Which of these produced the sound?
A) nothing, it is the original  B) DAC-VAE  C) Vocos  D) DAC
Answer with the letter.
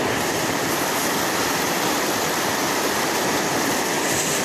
A